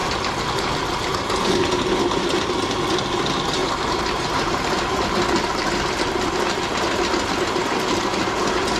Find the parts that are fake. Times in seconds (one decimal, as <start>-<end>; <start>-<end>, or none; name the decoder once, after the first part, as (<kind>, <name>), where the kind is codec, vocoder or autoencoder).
3.6-4.6 (vocoder, BigVGAN v2)